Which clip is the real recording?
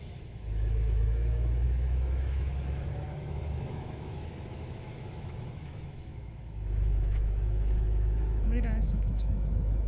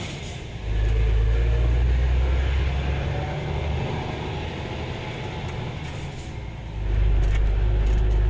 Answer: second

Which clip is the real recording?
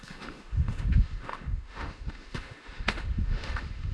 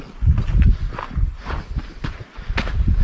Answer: second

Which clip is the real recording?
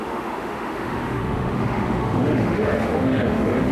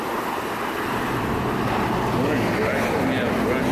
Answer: second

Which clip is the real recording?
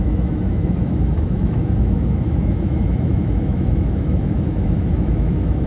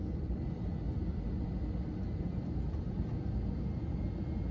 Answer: second